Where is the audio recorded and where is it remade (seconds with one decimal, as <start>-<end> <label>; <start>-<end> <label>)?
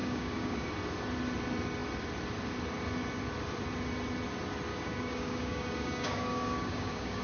0.0-0.7 remade; 0.7-4.7 recorded; 4.7-7.2 remade